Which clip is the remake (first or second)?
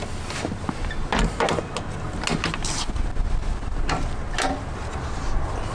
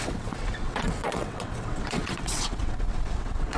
second